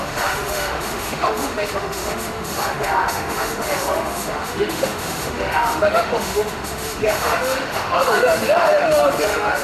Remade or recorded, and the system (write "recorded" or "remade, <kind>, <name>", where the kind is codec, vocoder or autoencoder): remade, autoencoder, DAC-VAE